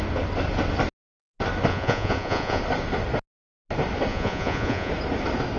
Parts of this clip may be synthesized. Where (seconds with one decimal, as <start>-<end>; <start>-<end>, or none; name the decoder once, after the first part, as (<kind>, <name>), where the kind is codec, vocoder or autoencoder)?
1.7-2.6 (vocoder, Vocos); 4.1-4.9